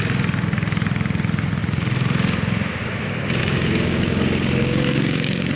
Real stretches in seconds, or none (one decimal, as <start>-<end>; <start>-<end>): 0.0-3.4